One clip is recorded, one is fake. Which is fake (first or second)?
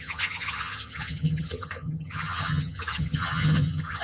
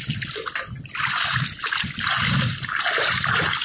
first